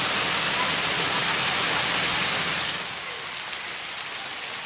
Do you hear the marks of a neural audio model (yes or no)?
no